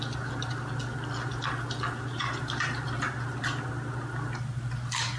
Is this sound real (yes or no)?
yes